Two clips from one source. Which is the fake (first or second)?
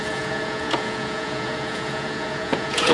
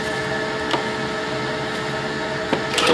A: first